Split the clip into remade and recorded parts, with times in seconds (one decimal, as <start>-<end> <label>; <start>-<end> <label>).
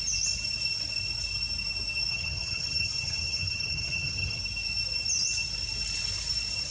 0.0-2.1 recorded; 2.1-4.4 remade; 4.4-6.7 recorded